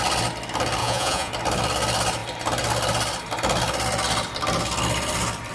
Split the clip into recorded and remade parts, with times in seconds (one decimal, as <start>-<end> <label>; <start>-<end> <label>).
0.0-0.8 recorded; 0.8-1.3 remade; 1.3-5.5 recorded